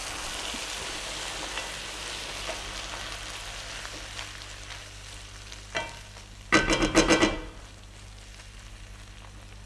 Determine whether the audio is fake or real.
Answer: real